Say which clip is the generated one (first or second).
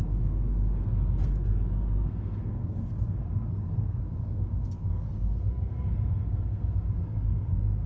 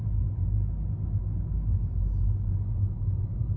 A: first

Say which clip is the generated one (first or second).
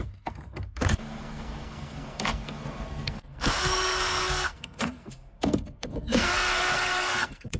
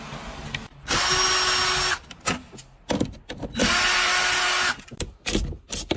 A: first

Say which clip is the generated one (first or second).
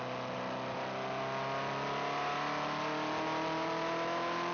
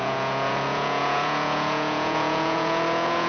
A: second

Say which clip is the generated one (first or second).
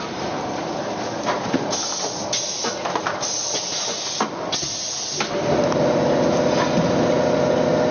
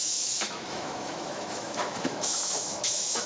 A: second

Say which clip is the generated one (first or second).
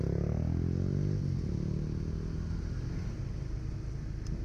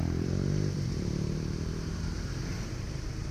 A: second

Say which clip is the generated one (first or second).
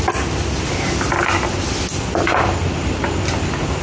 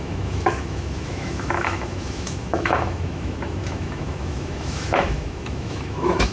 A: second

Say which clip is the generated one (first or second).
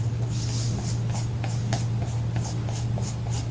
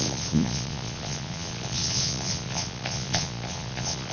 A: second